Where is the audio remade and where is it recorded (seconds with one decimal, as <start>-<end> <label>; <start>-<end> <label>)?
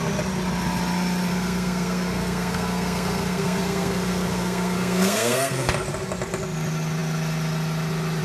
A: 0.0-1.3 recorded; 1.3-5.7 remade; 5.7-8.2 recorded